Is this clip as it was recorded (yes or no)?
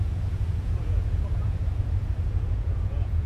no